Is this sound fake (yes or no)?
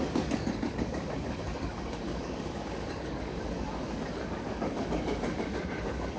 yes